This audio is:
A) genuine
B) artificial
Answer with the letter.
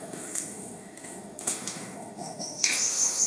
B